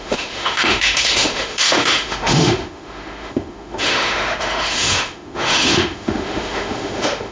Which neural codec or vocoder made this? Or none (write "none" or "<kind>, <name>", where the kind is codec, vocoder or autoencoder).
autoencoder, DAC-VAE